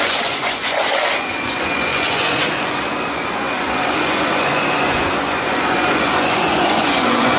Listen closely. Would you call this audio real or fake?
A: fake